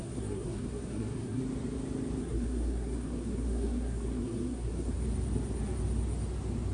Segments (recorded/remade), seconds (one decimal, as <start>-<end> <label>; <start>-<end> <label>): 0.0-1.4 remade; 1.4-2.2 recorded; 2.2-5.0 remade; 5.0-6.7 recorded